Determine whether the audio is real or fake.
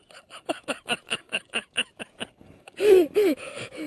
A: fake